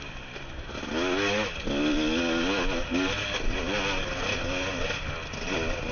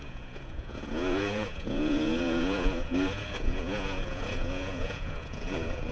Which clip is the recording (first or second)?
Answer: first